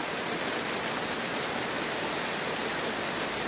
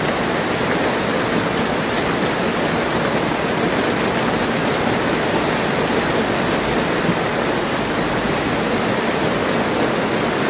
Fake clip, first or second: first